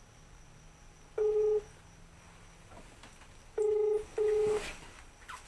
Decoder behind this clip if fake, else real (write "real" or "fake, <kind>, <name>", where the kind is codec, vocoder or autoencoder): real